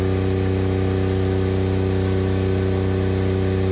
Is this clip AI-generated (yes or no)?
no